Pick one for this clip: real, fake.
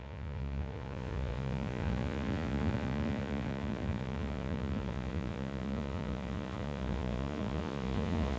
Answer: fake